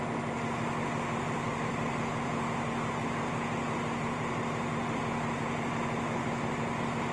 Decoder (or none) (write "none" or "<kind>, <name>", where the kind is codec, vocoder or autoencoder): none